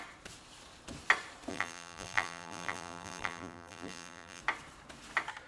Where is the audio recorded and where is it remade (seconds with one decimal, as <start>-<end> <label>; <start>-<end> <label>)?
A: 0.0-1.5 recorded; 1.5-4.4 remade; 4.4-5.5 recorded